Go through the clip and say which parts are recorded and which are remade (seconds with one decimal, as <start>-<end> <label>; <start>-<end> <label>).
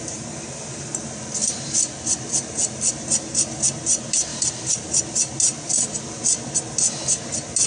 0.0-4.3 recorded; 4.3-5.0 remade; 5.0-7.7 recorded